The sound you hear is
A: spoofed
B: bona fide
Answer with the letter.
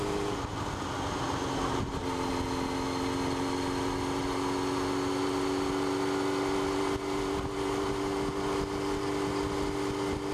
B